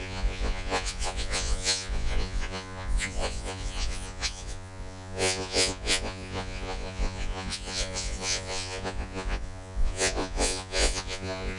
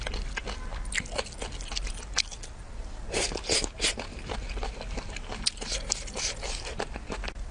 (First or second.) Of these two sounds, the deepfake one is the first